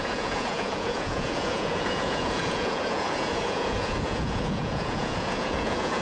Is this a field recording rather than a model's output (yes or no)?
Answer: no